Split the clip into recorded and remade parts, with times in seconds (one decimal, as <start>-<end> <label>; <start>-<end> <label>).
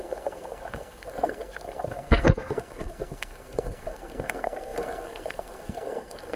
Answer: 0.0-6.4 remade